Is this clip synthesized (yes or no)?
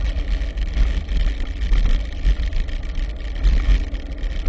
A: no